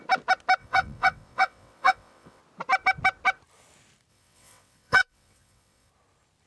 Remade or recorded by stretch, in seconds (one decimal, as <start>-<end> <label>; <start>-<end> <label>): 0.0-0.6 recorded; 0.6-2.4 remade; 2.4-4.1 recorded; 4.1-5.9 remade; 5.9-6.5 recorded